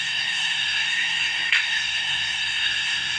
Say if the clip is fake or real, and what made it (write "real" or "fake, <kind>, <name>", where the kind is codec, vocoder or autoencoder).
fake, codec, SNAC